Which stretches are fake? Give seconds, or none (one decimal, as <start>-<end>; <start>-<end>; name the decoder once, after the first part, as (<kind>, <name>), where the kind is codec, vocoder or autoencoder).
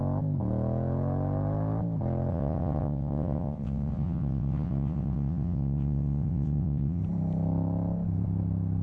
2.3-7.0 (vocoder, WaveNeXt)